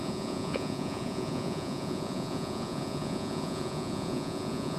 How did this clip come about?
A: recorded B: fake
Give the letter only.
B